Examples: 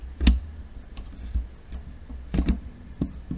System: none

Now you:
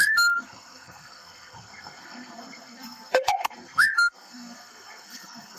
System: codec, SNAC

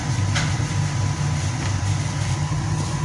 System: none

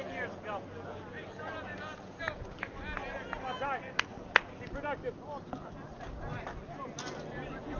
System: none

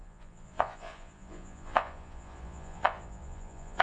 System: vocoder, Vocos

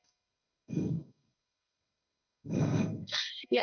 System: codec, SNAC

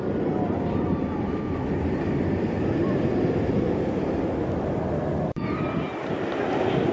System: none